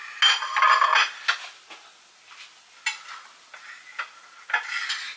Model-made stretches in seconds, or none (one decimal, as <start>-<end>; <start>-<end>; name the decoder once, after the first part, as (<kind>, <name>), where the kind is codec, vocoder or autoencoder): none